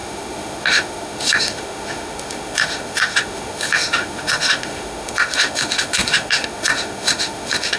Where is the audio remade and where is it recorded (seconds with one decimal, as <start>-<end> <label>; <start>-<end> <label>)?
0.0-7.8 remade